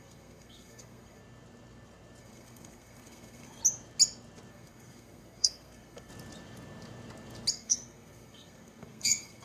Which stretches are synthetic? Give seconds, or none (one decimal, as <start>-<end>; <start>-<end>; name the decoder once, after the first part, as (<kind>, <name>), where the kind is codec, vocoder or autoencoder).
0.0-1.2 (codec, SNAC); 2.2-3.6; 4.5-6.1; 7.5-9.4